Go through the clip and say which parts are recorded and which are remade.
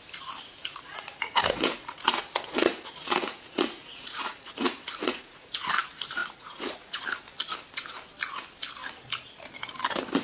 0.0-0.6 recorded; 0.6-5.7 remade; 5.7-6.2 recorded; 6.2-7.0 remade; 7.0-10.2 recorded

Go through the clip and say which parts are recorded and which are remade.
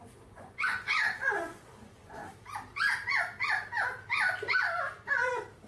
0.0-2.2 remade; 2.2-5.7 recorded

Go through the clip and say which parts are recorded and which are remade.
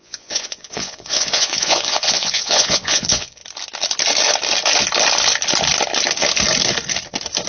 0.0-3.4 remade; 3.4-7.5 recorded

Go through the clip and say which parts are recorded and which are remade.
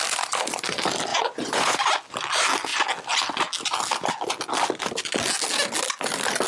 0.0-1.1 recorded; 1.1-1.8 remade; 1.8-6.5 recorded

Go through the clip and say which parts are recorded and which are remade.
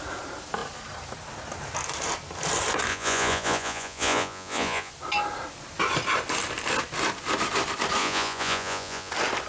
0.0-2.9 recorded; 2.9-4.9 remade; 4.9-8.0 recorded; 8.0-9.1 remade; 9.1-9.5 recorded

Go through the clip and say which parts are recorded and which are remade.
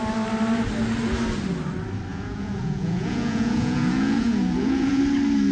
0.0-2.1 recorded; 2.1-5.0 remade; 5.0-5.5 recorded